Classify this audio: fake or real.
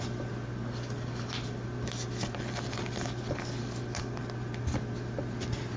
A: real